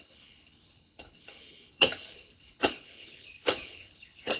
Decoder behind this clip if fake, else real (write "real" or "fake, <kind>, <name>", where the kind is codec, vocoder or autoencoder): fake, codec, HILCodec